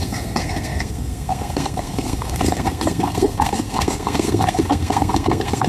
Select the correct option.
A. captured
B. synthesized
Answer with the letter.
B